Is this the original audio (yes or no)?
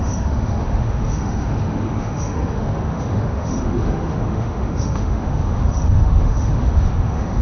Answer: no